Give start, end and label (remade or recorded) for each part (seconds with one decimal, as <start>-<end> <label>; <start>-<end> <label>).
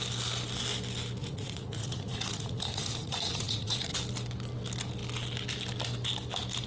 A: 0.0-1.2 recorded; 1.2-4.0 remade; 4.0-6.7 recorded